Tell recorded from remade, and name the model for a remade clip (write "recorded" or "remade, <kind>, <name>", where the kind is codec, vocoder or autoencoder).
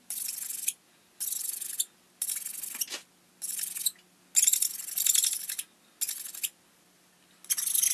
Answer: recorded